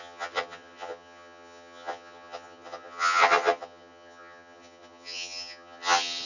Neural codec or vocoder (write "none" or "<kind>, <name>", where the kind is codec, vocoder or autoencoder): vocoder, HiFi-GAN